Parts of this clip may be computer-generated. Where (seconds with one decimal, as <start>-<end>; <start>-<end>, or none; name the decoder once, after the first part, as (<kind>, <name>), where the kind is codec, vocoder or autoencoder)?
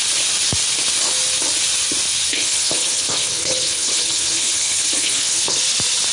2.3-5.6 (codec, HILCodec)